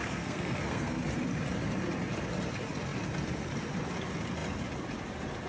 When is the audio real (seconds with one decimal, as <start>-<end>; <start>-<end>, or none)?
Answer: 1.0-5.5